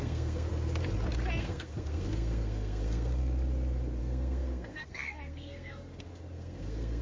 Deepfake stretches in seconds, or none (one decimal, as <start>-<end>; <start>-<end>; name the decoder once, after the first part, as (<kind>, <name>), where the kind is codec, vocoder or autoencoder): 0.0-0.5 (codec, SNAC); 1.4-3.2; 4.0-7.0